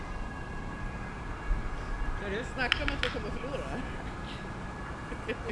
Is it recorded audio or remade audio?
recorded